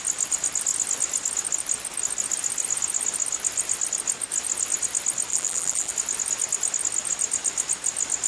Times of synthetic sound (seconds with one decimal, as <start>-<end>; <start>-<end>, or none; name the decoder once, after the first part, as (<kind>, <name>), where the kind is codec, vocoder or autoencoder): 5.3-5.9 (vocoder, BigVGAN v2)